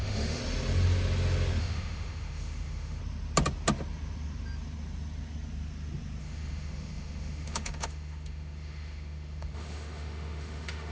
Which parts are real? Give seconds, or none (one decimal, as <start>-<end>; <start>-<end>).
0.4-1.6; 3.0-6.2